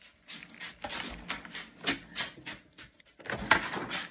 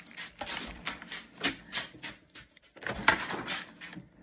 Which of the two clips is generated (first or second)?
second